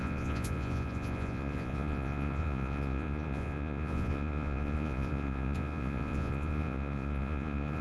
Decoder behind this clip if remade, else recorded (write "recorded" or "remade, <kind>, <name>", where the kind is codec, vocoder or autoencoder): remade, vocoder, Vocos